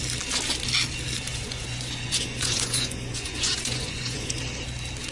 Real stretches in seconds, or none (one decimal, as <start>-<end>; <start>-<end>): 0.0-1.3; 4.4-5.1